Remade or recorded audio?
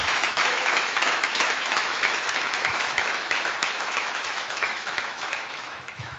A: remade